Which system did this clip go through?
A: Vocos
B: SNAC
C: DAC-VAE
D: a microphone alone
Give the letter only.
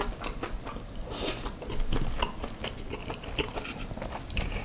D